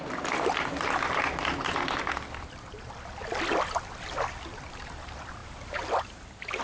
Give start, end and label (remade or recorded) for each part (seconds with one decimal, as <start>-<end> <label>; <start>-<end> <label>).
0.0-6.6 recorded